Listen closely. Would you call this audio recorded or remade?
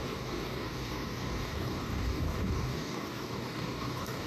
remade